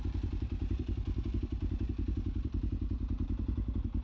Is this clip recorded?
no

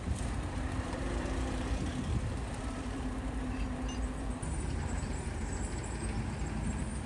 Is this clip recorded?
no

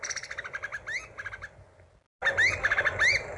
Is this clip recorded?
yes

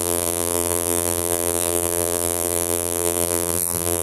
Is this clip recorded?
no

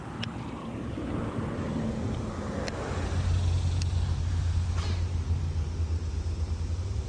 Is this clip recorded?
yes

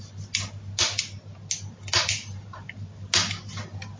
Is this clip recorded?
yes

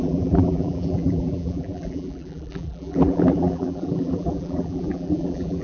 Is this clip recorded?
no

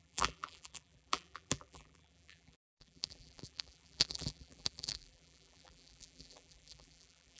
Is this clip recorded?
no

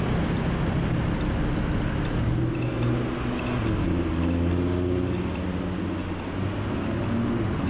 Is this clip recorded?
yes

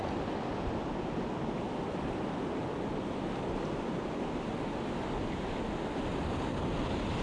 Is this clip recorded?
yes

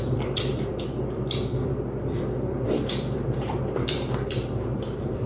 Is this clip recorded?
no